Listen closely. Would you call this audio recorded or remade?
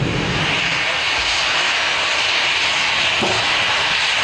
recorded